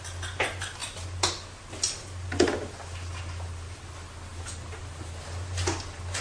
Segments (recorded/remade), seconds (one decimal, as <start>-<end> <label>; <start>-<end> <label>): 0.0-6.2 recorded

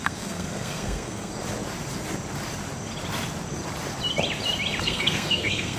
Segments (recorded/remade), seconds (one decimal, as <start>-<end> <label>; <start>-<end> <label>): 0.0-1.3 remade; 1.3-4.8 recorded; 4.8-5.8 remade

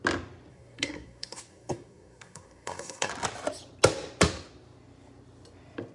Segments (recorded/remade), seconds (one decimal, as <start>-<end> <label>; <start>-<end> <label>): 0.0-0.5 recorded; 0.5-3.1 remade; 3.1-5.9 recorded